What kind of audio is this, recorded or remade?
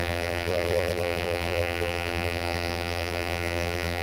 remade